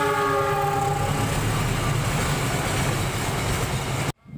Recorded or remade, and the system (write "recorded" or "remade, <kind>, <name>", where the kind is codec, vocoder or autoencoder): recorded